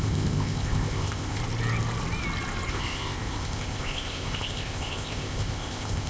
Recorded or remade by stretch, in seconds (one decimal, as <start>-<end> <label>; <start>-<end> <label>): 0.0-1.4 remade; 1.4-2.7 recorded; 2.7-6.1 remade